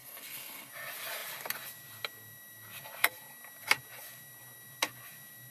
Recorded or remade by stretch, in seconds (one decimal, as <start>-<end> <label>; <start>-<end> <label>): 0.0-0.7 remade; 0.7-5.5 recorded